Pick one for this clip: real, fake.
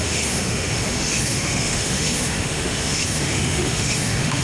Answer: fake